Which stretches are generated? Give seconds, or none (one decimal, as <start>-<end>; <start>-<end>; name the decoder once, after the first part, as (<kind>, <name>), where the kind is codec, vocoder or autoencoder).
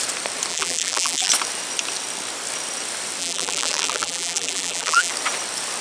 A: 0.5-1.3 (vocoder, BigVGAN v2); 3.2-5.1